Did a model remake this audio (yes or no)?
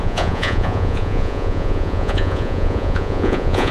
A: yes